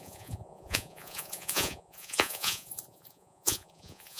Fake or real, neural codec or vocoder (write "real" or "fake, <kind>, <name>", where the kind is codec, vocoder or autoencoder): fake, vocoder, Vocos